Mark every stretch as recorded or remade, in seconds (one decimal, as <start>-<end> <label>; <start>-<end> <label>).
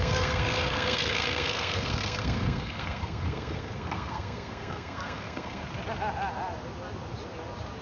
0.0-5.6 remade; 5.6-7.8 recorded